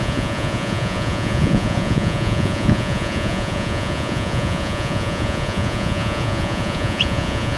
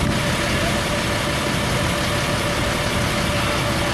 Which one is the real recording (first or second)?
second